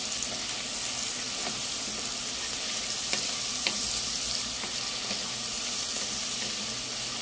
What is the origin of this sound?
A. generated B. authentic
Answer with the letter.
B